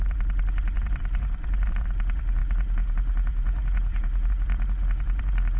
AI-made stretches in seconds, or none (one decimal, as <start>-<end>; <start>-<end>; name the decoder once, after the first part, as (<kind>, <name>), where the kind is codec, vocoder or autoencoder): 0.0-5.6 (vocoder, BigVGAN v2)